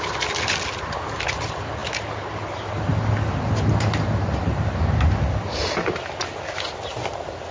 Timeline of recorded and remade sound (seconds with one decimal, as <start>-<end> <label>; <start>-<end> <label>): 0.0-7.5 recorded